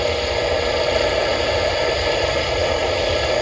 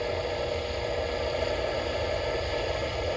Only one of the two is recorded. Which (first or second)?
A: second